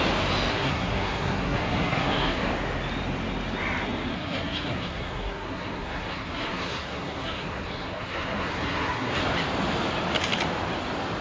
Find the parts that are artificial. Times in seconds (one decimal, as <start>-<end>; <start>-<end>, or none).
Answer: 0.5-2.5; 4.1-9.1